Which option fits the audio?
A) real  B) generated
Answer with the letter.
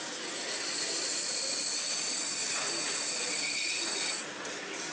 A